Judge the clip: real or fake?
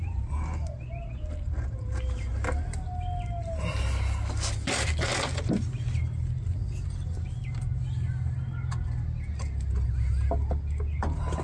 real